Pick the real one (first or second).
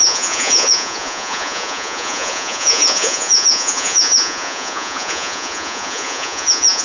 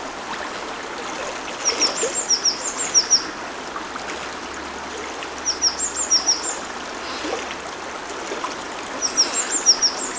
second